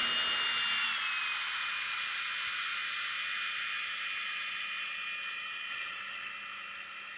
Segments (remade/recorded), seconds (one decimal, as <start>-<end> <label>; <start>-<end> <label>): 0.0-5.7 recorded; 5.7-6.3 remade; 6.3-7.2 recorded